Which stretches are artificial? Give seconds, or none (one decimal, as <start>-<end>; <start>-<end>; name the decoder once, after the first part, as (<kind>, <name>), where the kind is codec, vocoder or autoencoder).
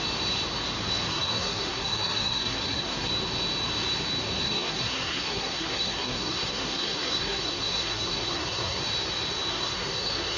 1.1-3.1 (codec, SNAC); 4.4-8.8; 9.5-10.4